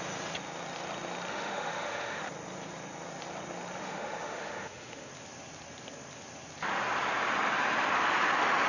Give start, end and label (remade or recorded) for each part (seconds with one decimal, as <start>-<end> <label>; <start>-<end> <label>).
0.0-1.3 recorded; 1.3-2.2 remade; 2.2-3.8 recorded; 3.8-5.1 remade; 5.1-8.7 recorded